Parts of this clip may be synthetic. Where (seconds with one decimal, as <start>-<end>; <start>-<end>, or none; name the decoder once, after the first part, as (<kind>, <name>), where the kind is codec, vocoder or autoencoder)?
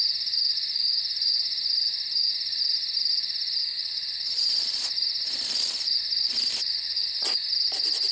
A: 3.6-4.8 (vocoder, Vocos); 6.6-7.4